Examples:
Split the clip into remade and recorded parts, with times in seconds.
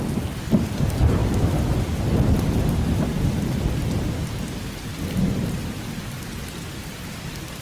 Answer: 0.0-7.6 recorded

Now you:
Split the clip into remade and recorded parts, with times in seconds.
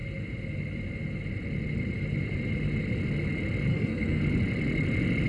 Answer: 0.0-3.7 recorded; 3.7-4.2 remade; 4.2-5.3 recorded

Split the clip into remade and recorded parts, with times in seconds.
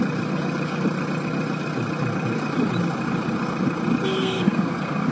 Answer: 0.0-4.1 recorded; 4.1-5.1 remade